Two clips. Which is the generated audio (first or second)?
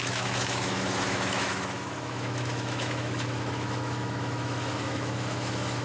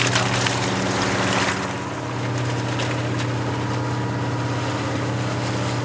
first